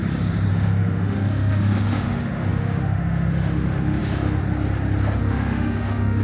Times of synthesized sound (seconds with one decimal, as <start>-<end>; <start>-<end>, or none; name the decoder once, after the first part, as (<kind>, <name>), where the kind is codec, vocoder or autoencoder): 0.5-4.4 (autoencoder, DAC-VAE); 5.2-6.2